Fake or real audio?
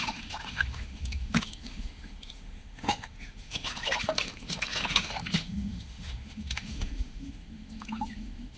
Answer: fake